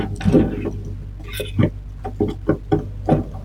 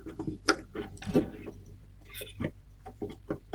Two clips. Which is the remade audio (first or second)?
second